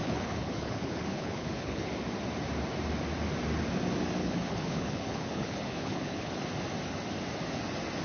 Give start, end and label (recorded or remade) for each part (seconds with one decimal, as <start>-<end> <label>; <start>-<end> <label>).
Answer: 0.0-1.9 remade; 1.9-4.2 recorded; 4.2-6.3 remade; 6.3-8.0 recorded